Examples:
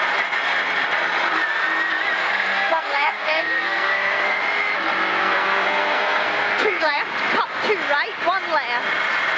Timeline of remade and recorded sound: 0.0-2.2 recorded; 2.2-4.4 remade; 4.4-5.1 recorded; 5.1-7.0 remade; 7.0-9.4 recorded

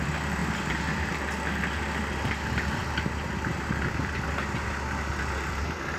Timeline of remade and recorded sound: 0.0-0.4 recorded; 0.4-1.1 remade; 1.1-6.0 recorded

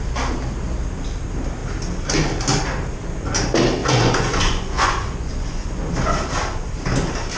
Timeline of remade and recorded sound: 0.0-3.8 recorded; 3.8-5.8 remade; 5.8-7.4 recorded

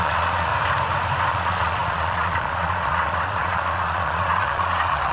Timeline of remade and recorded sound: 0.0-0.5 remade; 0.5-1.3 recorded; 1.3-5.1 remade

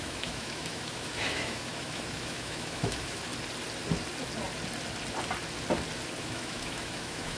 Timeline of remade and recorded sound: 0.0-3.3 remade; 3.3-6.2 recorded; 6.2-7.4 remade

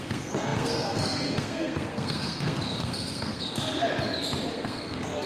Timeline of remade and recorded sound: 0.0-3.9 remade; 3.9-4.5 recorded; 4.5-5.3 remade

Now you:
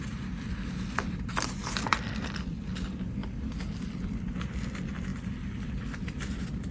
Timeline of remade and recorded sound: 0.0-1.6 remade; 1.6-2.2 recorded; 2.2-6.7 remade

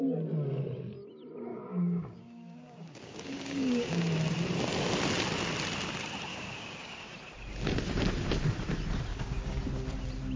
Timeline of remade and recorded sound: 0.0-1.5 recorded; 1.5-4.1 remade; 4.1-6.3 recorded; 6.3-7.1 remade; 7.1-9.1 recorded; 9.1-9.6 remade; 9.6-10.4 recorded